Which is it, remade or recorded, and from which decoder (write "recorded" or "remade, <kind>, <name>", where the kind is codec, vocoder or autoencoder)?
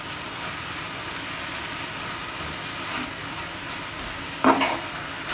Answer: recorded